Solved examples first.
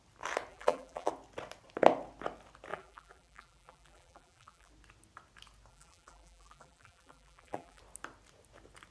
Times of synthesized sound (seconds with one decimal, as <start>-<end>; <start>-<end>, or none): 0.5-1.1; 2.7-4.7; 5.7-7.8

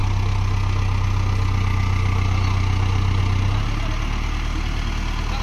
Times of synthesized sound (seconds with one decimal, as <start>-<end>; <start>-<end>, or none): none

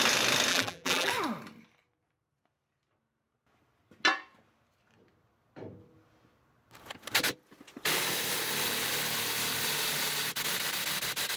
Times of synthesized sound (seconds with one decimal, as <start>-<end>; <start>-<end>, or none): 0.5-1.1

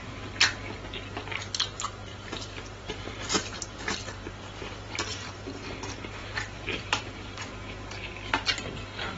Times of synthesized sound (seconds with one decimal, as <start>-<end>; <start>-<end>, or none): 2.1-5.5; 6.2-7.7

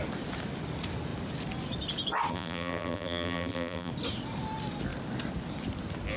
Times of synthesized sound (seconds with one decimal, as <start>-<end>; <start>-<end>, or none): 2.3-3.9